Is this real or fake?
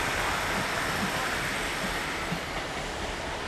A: fake